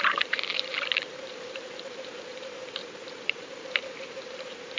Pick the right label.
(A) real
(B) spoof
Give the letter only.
B